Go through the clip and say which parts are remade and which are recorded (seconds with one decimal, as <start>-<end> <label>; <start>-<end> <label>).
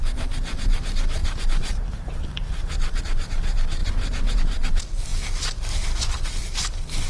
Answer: 0.0-1.2 recorded; 1.2-3.0 remade; 3.0-3.8 recorded; 3.8-4.4 remade; 4.4-7.1 recorded